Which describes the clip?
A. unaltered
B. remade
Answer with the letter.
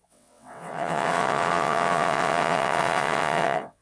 B